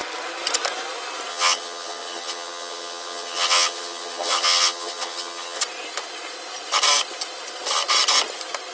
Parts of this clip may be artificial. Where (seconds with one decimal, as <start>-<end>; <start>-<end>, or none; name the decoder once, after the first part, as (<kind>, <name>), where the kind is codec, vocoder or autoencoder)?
1.3-5.6 (vocoder, HiFi-GAN)